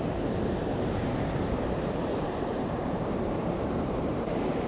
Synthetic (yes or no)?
yes